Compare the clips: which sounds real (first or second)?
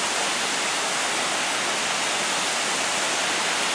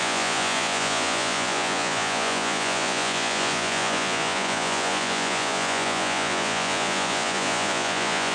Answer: first